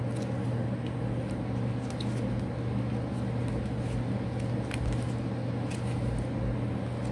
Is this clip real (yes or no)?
yes